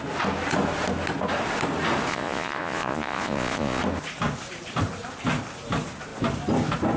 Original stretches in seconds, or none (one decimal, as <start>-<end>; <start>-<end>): 0.0-2.1; 3.8-7.0